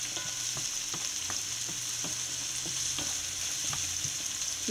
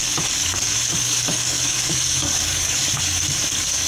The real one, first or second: first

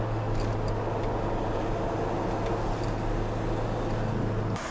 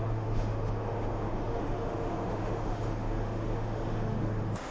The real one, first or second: first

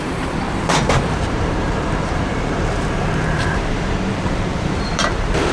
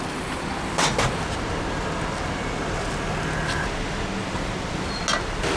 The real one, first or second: second